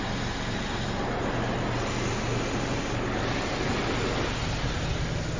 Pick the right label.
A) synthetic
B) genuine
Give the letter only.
B